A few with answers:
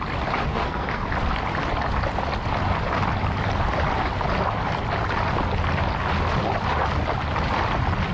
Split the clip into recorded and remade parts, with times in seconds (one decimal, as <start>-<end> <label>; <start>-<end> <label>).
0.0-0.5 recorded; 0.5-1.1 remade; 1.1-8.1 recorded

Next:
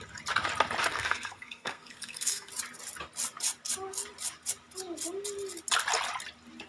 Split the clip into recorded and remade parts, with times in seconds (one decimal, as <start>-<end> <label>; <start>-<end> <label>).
0.0-0.9 recorded; 0.9-2.5 remade; 2.5-6.7 recorded

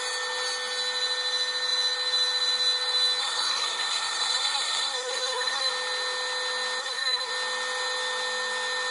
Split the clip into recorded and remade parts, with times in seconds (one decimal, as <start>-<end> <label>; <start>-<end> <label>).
0.0-3.2 recorded; 3.2-5.7 remade; 5.7-6.8 recorded; 6.8-7.3 remade; 7.3-8.9 recorded

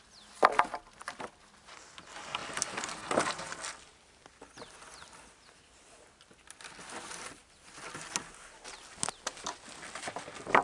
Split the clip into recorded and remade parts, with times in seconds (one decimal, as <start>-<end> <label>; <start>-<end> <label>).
0.0-10.6 recorded

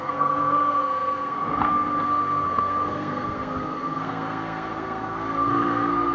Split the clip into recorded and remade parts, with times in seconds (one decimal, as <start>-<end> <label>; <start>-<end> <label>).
0.0-6.1 remade

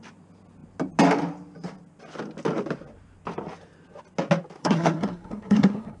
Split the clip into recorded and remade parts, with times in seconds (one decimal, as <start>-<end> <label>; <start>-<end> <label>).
0.0-4.6 recorded; 4.6-6.0 remade